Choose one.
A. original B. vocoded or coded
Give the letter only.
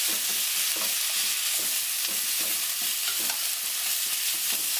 A